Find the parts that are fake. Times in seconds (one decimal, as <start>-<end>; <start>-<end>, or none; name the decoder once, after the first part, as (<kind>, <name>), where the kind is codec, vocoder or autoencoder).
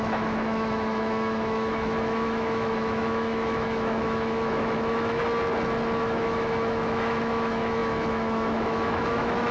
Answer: 0.0-5.2 (autoencoder, DAC-VAE); 6.0-9.5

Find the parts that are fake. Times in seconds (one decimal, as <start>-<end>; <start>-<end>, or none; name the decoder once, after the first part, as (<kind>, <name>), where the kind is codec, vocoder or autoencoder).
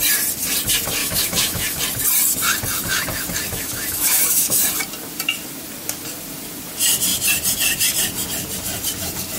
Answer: 1.0-1.8 (autoencoder, DAC-VAE); 3.5-4.6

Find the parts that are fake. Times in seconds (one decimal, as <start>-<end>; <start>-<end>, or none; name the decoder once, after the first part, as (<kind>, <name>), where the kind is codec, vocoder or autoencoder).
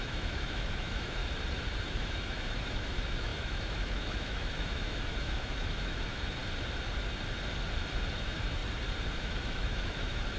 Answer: 0.0-1.2 (autoencoder, DAC-VAE); 1.8-6.4; 8.2-8.6; 9.2-10.4